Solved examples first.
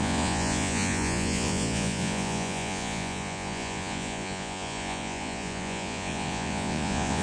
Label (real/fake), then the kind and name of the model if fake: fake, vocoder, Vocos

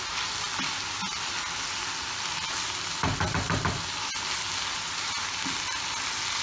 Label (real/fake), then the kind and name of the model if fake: real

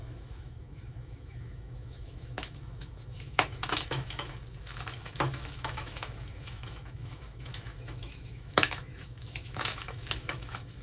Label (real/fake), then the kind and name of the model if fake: fake, autoencoder, DAC-VAE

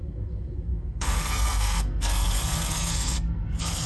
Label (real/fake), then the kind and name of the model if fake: fake, codec, SNAC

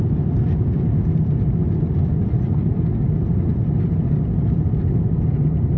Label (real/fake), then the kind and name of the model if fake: real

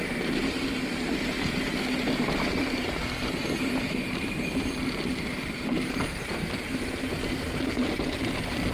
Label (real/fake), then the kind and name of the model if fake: fake, vocoder, BigVGAN v2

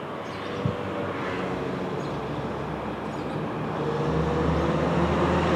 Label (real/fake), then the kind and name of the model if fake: real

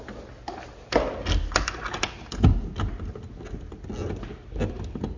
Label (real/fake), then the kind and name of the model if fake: real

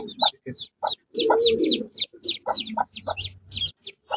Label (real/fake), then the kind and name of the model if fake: real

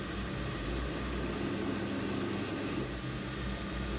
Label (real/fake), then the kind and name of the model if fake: real